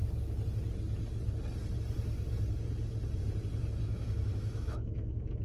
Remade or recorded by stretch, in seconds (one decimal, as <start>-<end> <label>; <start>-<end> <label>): 0.0-3.8 recorded; 3.8-5.4 remade